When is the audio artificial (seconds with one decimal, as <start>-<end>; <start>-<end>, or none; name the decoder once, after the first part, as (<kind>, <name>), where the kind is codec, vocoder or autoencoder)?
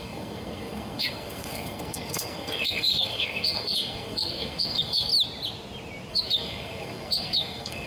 0.0-5.1 (codec, SNAC); 6.1-7.9